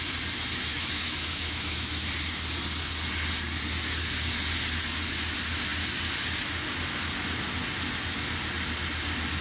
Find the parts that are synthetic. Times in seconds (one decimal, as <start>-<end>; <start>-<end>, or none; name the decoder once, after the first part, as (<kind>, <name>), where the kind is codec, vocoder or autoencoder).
0.7-2.1 (autoencoder, DAC-VAE)